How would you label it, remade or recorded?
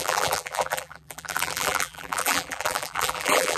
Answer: remade